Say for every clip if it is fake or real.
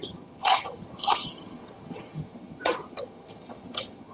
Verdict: fake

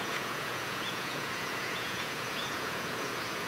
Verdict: fake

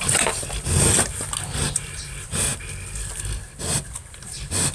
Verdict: real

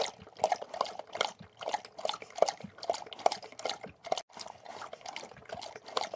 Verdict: real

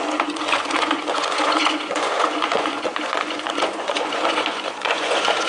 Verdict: fake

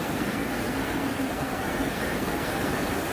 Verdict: fake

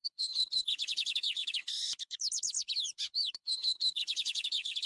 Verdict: fake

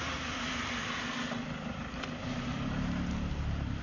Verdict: real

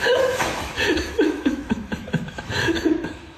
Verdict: fake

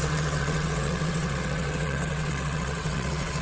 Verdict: fake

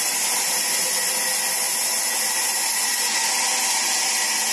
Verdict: real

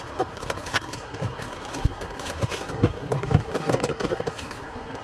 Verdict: fake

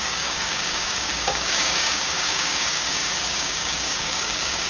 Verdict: fake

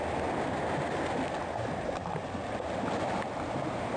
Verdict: real